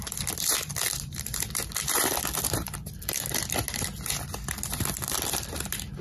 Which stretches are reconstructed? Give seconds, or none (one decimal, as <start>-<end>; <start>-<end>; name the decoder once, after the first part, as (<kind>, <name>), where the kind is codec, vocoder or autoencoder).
0.0-3.6 (vocoder, BigVGAN v2)